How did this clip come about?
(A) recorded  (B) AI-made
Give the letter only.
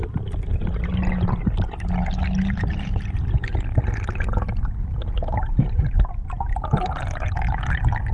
A